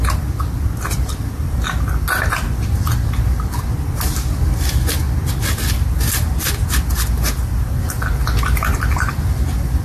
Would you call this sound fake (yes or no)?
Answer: no